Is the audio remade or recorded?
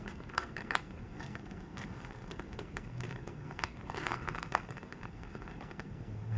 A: remade